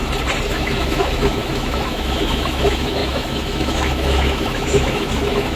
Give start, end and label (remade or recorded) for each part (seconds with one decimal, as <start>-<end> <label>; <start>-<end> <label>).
0.0-0.5 recorded; 0.5-5.6 remade